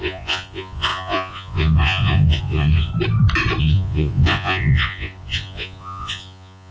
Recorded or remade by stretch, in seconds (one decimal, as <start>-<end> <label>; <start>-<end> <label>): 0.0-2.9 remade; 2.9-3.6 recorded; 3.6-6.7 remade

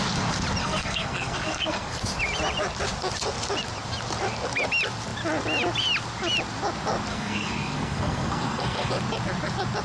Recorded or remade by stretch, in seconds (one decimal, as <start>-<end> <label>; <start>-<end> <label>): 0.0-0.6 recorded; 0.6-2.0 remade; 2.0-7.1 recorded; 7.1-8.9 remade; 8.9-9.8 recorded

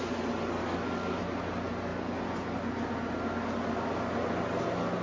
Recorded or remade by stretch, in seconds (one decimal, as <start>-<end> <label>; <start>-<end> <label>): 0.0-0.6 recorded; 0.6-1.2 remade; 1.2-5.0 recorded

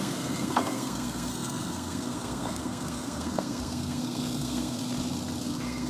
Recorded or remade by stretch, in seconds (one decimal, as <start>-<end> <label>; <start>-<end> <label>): 0.0-4.8 remade; 4.8-5.4 recorded; 5.4-5.9 remade

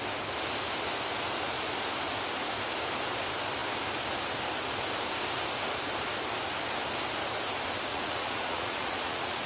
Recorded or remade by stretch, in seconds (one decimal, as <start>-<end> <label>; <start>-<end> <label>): 0.0-7.9 recorded; 7.9-9.5 remade

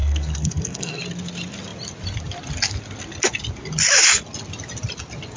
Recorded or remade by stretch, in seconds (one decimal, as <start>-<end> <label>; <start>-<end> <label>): 0.0-1.0 remade; 1.0-5.4 recorded